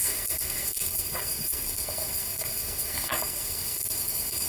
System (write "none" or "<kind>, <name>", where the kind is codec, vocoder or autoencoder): codec, SNAC